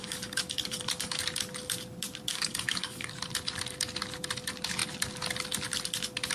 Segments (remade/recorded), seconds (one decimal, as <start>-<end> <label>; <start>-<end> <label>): 0.0-1.2 remade; 1.2-2.3 recorded; 2.3-3.1 remade; 3.1-6.3 recorded